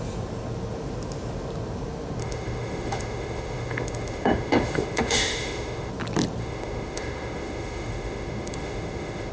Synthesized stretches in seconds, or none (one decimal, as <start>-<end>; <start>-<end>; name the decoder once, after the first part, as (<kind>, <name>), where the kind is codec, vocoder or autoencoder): 2.2-5.9 (autoencoder, DAC-VAE); 6.4-9.3